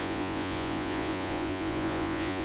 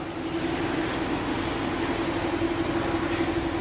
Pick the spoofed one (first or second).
first